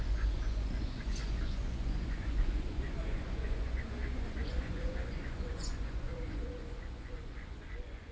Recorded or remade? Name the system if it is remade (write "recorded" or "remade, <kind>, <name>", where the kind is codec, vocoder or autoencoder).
remade, vocoder, Vocos